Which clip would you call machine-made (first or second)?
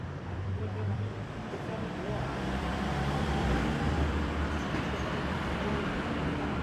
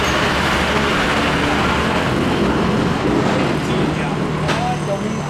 first